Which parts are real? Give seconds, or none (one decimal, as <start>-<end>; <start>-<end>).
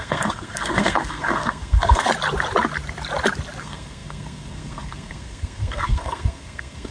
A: 2.1-3.6